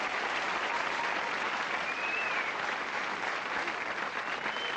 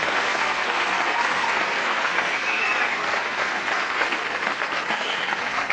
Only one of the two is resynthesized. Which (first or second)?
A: second